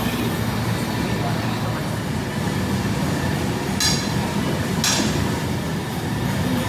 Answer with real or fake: real